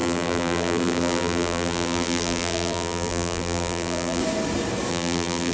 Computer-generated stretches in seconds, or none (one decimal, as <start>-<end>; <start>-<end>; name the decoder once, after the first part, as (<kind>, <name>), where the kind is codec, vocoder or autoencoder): 0.0-4.2 (vocoder, BigVGAN v2); 4.9-5.5